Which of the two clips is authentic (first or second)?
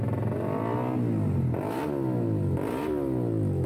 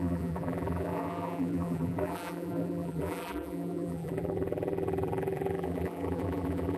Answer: first